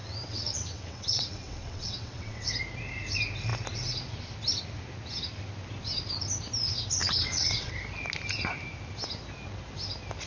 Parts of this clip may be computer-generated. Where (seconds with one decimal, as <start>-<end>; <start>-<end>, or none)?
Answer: 0.0-2.5; 7.0-7.7